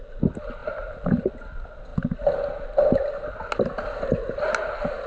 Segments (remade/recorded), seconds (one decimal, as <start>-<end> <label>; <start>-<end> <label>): 0.0-5.1 recorded